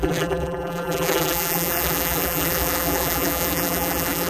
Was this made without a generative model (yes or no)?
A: no